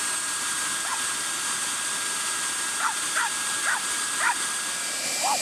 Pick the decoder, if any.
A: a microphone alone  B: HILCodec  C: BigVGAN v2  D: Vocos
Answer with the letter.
C